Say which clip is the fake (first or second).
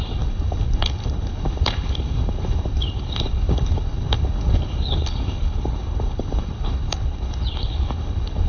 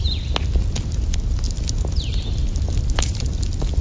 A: first